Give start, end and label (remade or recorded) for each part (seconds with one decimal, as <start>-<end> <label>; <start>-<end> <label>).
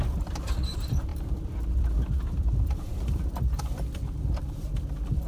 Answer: 0.0-5.3 remade